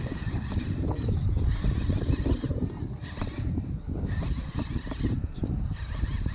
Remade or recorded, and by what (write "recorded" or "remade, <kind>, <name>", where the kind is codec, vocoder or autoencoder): recorded